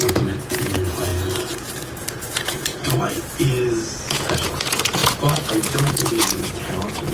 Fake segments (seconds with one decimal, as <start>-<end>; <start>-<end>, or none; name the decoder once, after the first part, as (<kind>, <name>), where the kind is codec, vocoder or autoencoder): 0.0-1.1 (vocoder, Vocos); 2.1-2.7; 3.5-7.1